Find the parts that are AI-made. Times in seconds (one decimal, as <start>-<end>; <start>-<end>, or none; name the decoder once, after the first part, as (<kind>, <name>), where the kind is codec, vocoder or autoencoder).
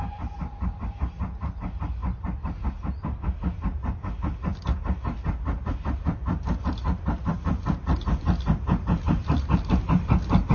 none